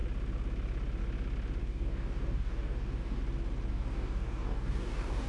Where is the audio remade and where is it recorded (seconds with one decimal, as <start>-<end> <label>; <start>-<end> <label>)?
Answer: 0.0-1.6 recorded; 1.6-3.2 remade; 3.2-3.7 recorded; 3.7-5.3 remade